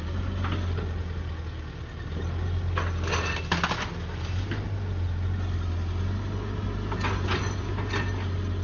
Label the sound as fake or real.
real